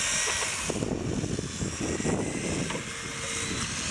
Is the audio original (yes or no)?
yes